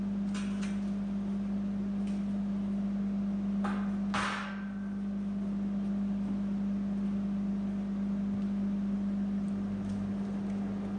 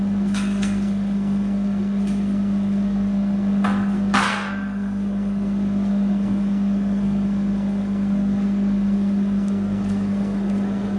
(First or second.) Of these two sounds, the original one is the first